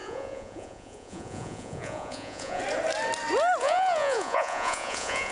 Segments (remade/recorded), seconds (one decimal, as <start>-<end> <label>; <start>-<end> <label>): 0.0-2.6 remade; 2.6-3.6 recorded; 3.6-5.3 remade